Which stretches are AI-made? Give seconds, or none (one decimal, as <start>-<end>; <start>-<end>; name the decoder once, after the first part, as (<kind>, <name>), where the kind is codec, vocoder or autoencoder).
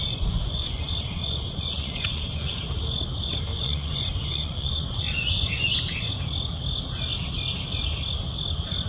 0.0-2.6 (vocoder, Vocos); 3.5-6.2